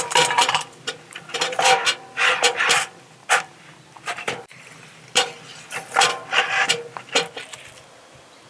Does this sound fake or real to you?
real